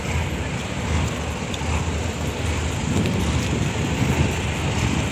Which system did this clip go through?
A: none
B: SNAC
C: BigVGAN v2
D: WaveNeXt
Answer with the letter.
A